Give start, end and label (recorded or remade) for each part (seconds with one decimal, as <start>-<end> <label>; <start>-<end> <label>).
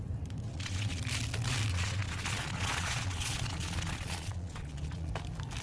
0.0-0.5 recorded; 0.5-1.0 remade; 1.0-1.7 recorded; 1.7-5.1 remade; 5.1-5.6 recorded